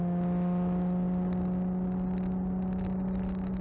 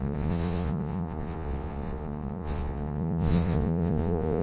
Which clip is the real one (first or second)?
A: first